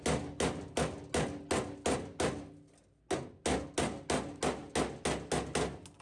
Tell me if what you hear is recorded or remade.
recorded